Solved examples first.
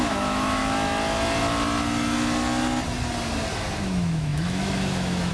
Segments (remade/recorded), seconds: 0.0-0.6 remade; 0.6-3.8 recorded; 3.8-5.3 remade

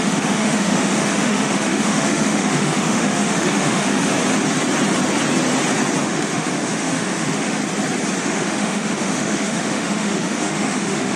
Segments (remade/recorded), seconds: 0.0-4.1 remade; 4.1-6.0 recorded; 6.0-7.6 remade; 7.6-8.2 recorded; 8.2-11.2 remade

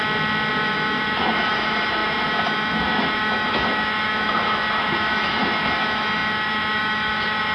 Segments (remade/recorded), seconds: 0.0-0.5 recorded; 0.5-7.5 remade

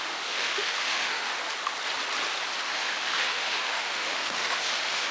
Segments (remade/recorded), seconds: 0.0-1.3 remade; 1.3-2.6 recorded; 2.6-5.1 remade

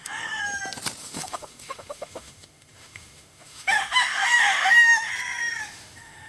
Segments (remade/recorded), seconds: 0.0-0.4 remade; 0.4-1.0 recorded; 1.0-5.1 remade; 5.1-5.6 recorded; 5.6-6.3 remade

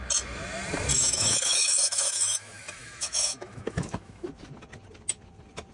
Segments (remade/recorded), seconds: 0.0-0.9 recorded; 0.9-4.3 remade; 4.3-5.7 recorded

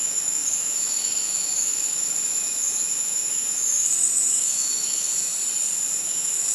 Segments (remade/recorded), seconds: 0.0-5.3 remade; 5.3-6.0 recorded; 6.0-6.5 remade